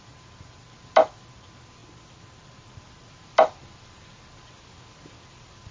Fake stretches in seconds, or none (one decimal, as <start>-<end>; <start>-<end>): none